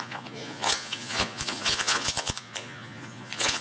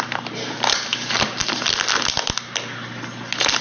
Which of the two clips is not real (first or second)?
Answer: first